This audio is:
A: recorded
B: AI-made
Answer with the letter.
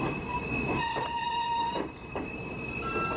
A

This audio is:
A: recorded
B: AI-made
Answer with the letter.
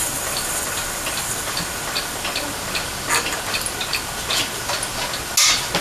A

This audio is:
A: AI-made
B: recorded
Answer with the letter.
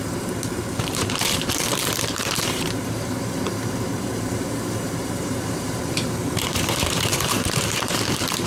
A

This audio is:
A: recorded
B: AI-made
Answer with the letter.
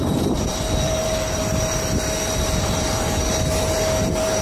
B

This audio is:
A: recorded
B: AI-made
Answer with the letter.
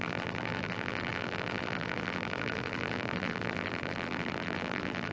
B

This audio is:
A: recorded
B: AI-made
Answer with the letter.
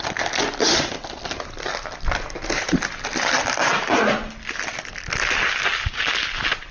A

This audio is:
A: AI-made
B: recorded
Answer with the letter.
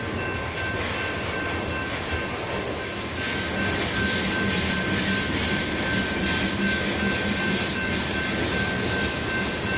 B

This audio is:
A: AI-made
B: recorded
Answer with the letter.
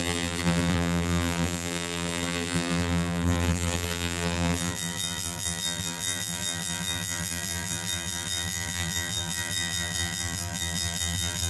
A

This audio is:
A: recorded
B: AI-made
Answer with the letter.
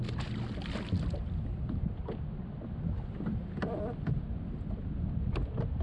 A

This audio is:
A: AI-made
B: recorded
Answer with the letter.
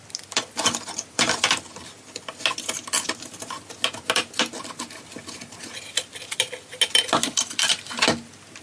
B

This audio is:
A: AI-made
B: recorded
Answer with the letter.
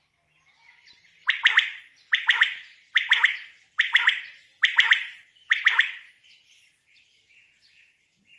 B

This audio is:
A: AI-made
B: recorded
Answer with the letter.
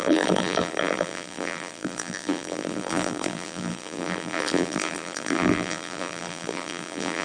A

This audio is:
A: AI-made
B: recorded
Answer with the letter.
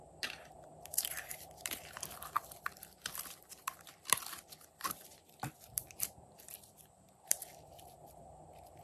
A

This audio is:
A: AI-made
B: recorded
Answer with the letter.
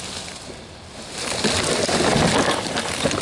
B